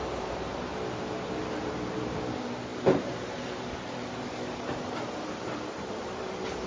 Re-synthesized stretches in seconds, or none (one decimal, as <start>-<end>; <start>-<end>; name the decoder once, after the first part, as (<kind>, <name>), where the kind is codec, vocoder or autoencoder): 0.0-0.7 (vocoder, BigVGAN v2); 1.2-6.7